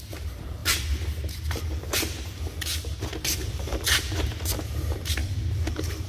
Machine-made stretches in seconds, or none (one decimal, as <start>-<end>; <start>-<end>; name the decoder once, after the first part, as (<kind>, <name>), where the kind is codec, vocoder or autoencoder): 0.0-6.1 (vocoder, BigVGAN v2)